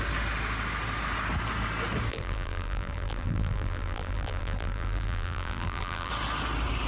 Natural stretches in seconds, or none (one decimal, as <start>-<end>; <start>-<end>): 0.0-2.1; 6.1-6.9